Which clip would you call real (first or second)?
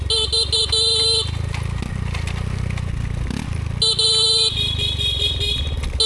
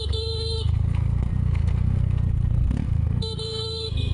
first